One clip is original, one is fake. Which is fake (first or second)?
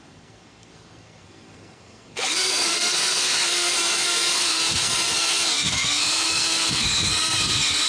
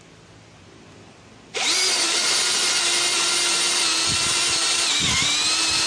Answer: first